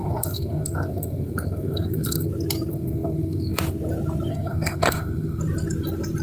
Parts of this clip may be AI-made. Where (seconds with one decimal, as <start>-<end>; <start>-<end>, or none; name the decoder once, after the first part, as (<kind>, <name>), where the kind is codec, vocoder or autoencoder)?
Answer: 0.0-2.3 (codec, SNAC); 2.7-3.6; 4.3-5.4